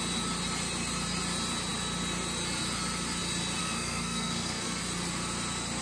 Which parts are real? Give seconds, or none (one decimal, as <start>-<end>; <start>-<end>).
0.0-3.6; 4.8-5.8